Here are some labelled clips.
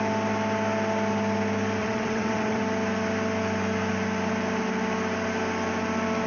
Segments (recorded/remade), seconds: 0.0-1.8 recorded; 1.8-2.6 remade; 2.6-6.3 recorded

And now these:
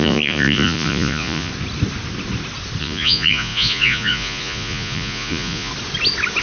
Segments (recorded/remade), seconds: 0.0-1.5 remade; 1.5-2.8 recorded; 2.8-5.7 remade; 5.7-6.4 recorded

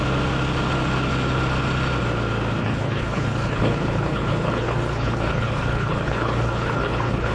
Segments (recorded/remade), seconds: 0.0-2.6 recorded; 2.6-7.3 remade

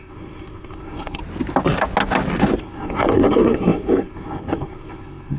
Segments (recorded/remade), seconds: 0.0-1.2 remade; 1.2-2.6 recorded; 2.6-5.4 remade